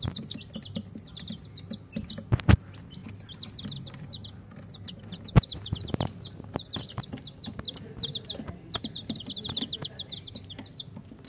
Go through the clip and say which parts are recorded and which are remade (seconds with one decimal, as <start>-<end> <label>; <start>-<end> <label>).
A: 0.0-11.3 recorded